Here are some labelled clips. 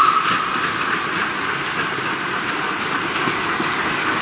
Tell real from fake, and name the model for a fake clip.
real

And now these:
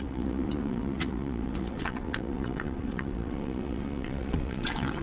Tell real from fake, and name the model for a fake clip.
fake, vocoder, WaveNeXt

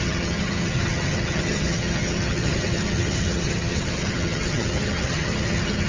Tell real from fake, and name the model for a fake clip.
fake, vocoder, HiFi-GAN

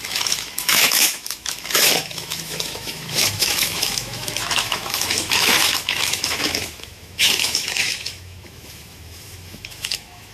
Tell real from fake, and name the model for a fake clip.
fake, autoencoder, DAC-VAE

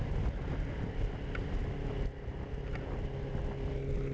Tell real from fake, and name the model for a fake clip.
real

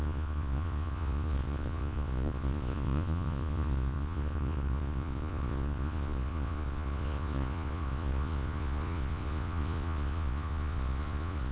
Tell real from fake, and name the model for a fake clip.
fake, vocoder, Vocos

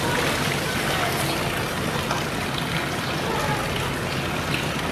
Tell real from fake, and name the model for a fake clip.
real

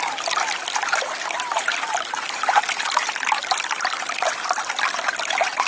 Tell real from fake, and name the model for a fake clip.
real